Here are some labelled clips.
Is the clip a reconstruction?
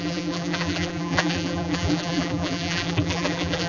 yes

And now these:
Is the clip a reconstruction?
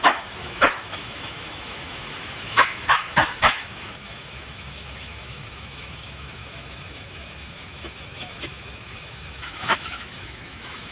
yes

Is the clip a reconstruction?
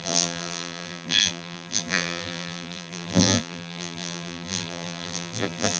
yes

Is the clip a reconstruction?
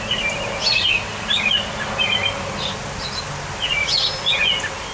no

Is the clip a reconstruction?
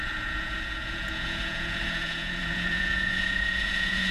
yes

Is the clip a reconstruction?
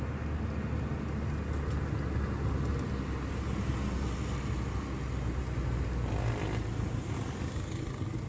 no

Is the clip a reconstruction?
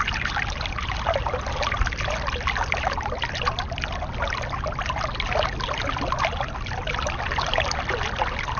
no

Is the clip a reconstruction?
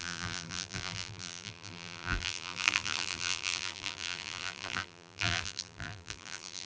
yes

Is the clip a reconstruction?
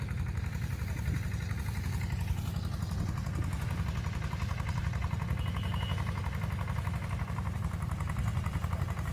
no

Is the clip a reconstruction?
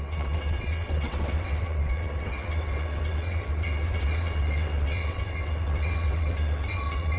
yes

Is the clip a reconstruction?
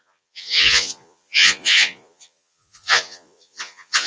yes